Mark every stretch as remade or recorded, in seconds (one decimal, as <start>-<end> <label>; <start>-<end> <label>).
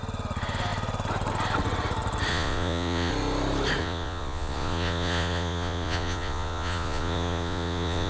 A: 0.0-2.3 recorded; 2.3-3.1 remade; 3.1-3.8 recorded; 3.8-8.1 remade